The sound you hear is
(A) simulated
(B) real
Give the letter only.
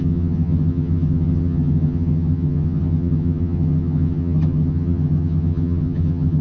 A